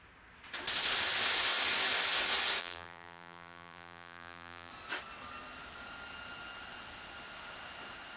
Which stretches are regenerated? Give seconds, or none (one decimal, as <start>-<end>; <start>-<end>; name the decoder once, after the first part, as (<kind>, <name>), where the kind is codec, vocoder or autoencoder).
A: 2.6-4.7 (vocoder, BigVGAN v2)

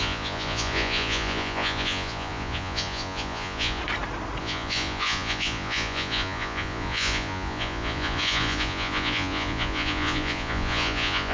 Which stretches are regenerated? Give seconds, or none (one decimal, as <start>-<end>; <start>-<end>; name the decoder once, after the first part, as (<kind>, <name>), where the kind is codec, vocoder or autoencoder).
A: 0.0-3.8 (vocoder, Vocos); 4.4-11.3

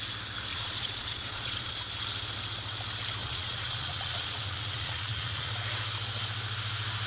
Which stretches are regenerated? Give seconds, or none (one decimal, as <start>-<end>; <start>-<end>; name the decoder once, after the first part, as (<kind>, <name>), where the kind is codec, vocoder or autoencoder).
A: 0.5-1.7 (vocoder, Vocos); 3.2-5.5